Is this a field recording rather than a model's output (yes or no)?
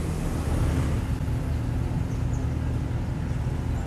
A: yes